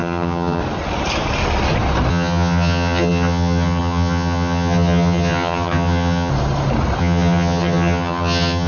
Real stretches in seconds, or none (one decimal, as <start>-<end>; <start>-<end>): 0.6-2.1; 6.3-7.0